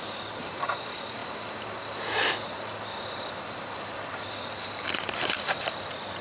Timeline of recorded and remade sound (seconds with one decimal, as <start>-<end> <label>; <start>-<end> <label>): 0.0-1.2 remade; 1.2-2.3 recorded; 2.3-6.2 remade